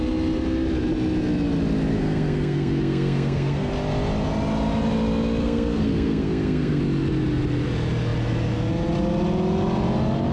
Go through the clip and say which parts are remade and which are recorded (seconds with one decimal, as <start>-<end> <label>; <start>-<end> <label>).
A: 0.0-1.9 recorded; 1.9-3.7 remade; 3.7-5.4 recorded; 5.4-6.8 remade; 6.8-10.3 recorded

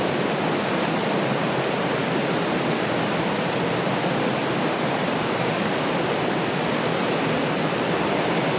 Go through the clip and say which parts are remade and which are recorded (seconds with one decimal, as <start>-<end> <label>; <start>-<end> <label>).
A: 0.0-2.0 remade; 2.0-3.2 recorded; 3.2-8.6 remade

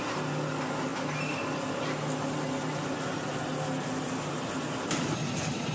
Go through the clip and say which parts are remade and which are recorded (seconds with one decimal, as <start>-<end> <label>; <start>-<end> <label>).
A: 0.0-5.7 recorded

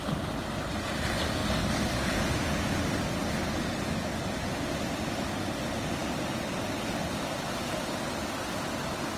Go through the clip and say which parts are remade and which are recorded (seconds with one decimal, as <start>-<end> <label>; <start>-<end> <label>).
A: 0.0-9.2 recorded

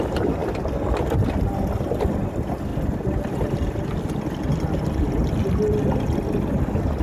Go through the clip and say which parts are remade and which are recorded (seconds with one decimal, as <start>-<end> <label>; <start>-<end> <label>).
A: 0.0-7.0 recorded

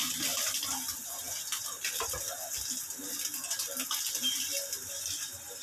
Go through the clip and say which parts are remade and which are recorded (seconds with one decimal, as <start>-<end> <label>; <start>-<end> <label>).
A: 0.0-5.6 recorded

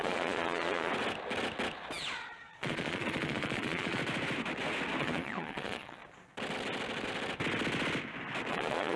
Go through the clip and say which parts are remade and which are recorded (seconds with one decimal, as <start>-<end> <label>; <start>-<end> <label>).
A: 0.0-0.9 remade; 0.9-2.0 recorded; 2.0-4.0 remade; 4.0-5.0 recorded; 5.0-6.0 remade; 6.0-8.5 recorded; 8.5-9.0 remade